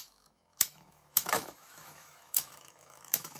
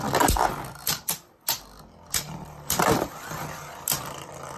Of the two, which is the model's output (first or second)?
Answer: first